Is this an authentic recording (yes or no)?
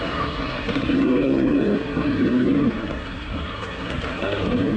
no